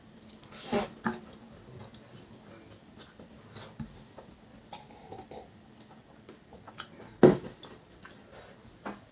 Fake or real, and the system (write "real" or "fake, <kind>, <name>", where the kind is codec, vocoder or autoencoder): real